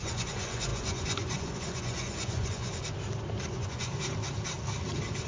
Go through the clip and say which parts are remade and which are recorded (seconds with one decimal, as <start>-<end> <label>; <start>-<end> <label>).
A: 0.0-2.7 remade; 2.7-3.5 recorded; 3.5-3.9 remade; 3.9-5.3 recorded